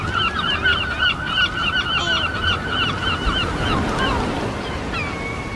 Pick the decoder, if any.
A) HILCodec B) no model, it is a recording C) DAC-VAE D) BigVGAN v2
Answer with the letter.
B